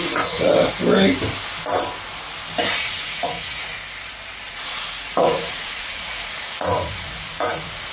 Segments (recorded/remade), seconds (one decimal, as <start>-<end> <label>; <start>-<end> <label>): 0.0-0.5 remade; 0.5-2.7 recorded; 2.7-3.7 remade; 3.7-4.5 recorded; 4.5-7.9 remade